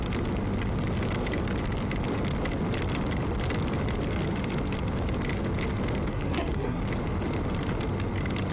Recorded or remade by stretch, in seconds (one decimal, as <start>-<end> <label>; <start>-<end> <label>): 0.0-6.1 recorded; 6.1-6.8 remade; 6.8-8.5 recorded